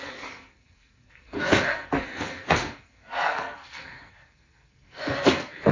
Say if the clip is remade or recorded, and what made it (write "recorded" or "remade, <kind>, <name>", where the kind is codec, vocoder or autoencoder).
remade, codec, SNAC